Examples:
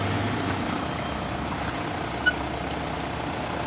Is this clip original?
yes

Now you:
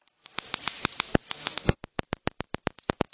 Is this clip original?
yes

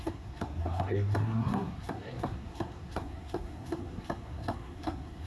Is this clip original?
no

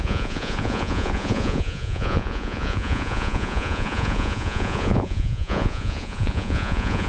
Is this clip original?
no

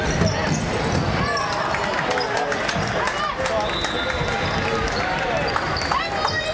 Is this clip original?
yes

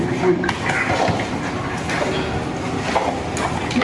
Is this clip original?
yes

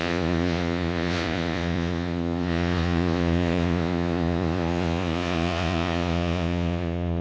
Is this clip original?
no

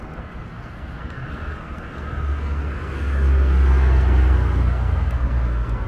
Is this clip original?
no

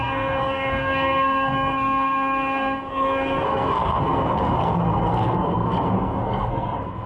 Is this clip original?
no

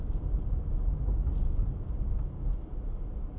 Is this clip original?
yes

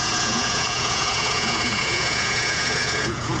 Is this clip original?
no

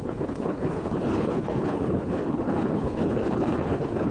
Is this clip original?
no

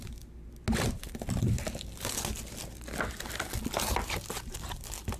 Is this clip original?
yes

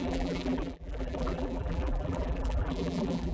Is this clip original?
no